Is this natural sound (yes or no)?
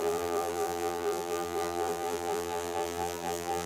no